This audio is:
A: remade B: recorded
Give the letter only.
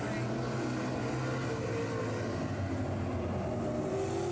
B